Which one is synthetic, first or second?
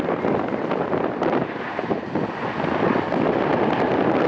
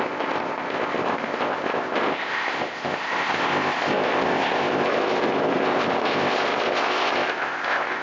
second